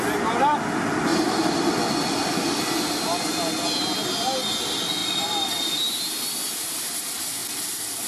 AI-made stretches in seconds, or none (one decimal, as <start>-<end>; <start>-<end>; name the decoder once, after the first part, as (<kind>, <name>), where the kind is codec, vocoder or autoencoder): none